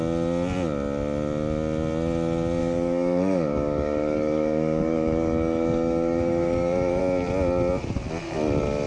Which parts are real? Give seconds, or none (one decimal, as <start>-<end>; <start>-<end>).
0.0-2.6; 7.0-8.9